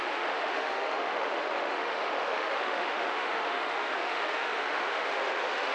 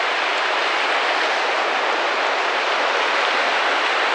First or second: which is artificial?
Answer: first